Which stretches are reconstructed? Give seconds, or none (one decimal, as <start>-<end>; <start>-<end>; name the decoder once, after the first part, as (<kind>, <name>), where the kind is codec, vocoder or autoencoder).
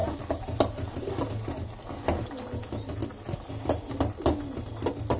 none